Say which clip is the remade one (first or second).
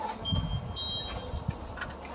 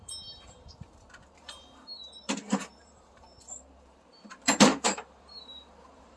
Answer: second